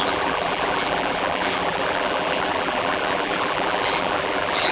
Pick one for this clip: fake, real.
fake